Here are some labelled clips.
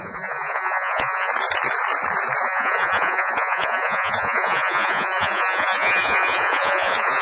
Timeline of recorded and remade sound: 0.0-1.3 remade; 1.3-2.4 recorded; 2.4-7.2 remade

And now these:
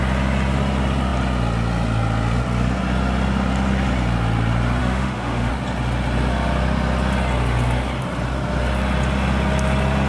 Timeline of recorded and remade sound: 0.0-4.8 recorded; 4.8-5.5 remade; 5.5-10.1 recorded

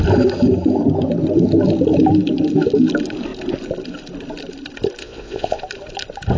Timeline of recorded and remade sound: 0.0-5.0 recorded; 5.0-5.6 remade; 5.6-6.4 recorded

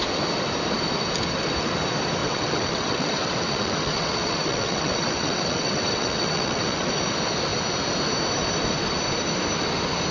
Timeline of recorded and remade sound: 0.0-2.2 recorded; 2.2-6.9 remade; 6.9-10.1 recorded

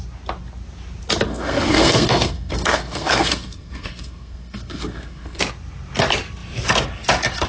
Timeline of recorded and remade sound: 0.0-1.3 recorded; 1.3-5.4 remade; 5.4-7.5 recorded

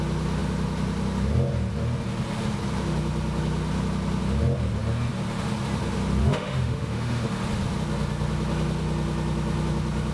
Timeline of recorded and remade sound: 0.0-6.2 recorded; 6.2-7.3 remade; 7.3-10.1 recorded

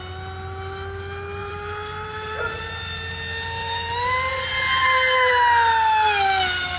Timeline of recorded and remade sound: 0.0-1.4 recorded; 1.4-2.7 remade; 2.7-3.6 recorded; 3.6-5.3 remade; 5.3-6.8 recorded

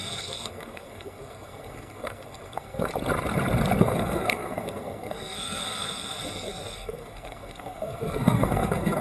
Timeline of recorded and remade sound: 0.0-2.9 remade; 2.9-3.8 recorded; 3.8-9.0 remade